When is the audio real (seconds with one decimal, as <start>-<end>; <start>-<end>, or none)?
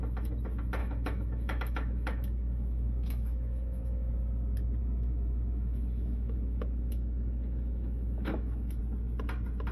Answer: 0.0-0.8; 4.1-4.8; 8.8-9.7